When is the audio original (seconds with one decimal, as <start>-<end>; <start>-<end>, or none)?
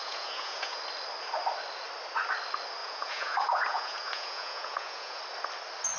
0.8-2.8; 5.2-6.0